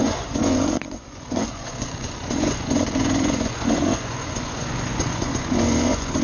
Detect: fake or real fake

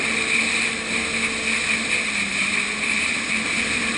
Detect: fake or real real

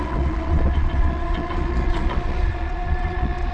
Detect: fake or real fake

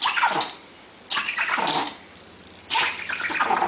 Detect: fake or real real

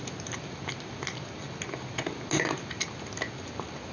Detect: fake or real real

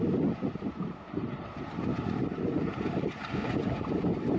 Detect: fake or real real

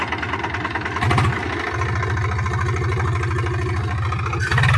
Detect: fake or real real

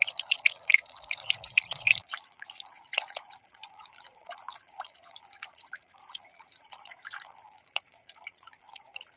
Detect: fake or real fake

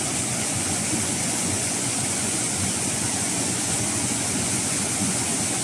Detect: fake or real fake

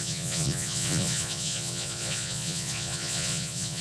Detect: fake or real fake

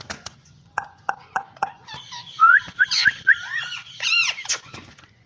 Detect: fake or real fake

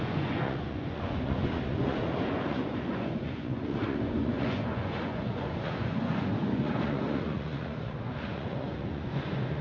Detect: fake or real fake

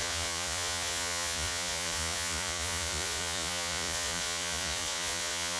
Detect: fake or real fake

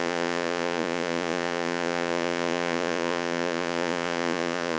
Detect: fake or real fake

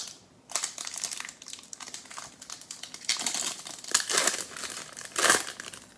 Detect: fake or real real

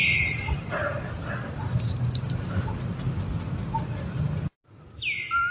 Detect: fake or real real